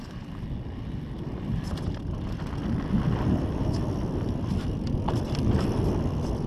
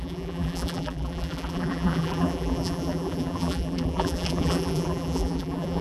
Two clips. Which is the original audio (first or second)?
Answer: first